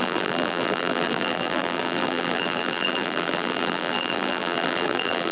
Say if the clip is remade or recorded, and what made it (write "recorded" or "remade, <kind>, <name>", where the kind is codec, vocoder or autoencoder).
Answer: remade, vocoder, BigVGAN v2